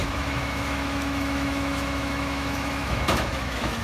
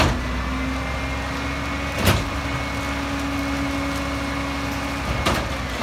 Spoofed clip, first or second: first